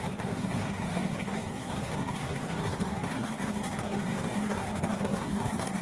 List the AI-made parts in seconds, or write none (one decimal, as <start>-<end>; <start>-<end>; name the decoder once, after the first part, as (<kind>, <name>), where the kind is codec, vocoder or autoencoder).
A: 0.0-5.8 (codec, SNAC)